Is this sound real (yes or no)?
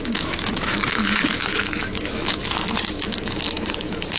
no